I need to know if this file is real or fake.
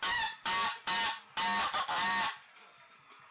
real